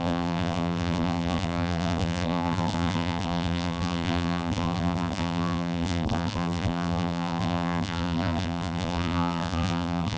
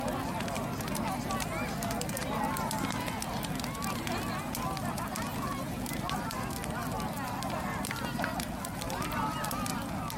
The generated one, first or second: first